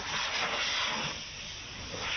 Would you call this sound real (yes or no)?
yes